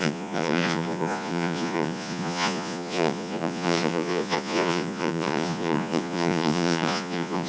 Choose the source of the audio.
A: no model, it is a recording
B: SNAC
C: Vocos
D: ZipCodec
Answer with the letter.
C